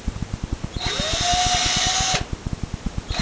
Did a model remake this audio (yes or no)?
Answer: no